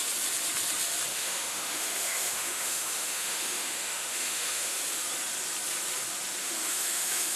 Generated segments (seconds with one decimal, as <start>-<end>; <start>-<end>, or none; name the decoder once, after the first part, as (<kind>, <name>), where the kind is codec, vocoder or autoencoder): 1.1-4.8 (autoencoder, DAC-VAE); 6.4-7.4